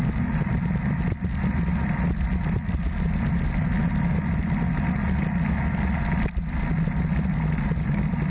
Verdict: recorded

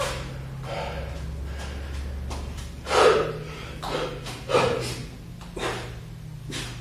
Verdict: recorded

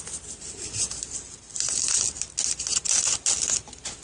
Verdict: recorded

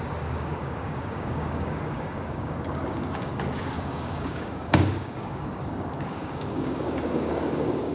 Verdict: remade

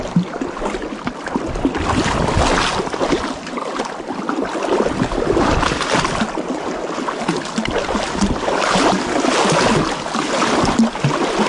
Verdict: recorded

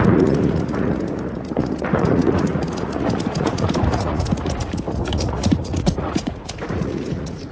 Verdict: remade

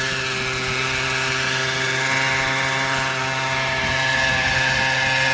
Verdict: recorded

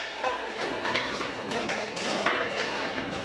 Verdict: remade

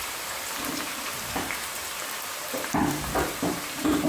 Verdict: remade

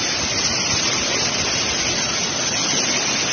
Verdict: recorded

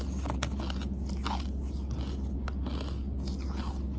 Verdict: recorded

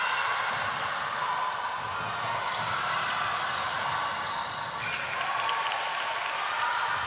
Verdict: recorded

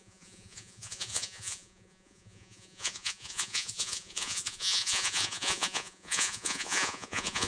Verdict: remade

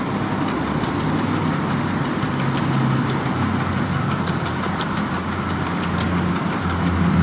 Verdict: recorded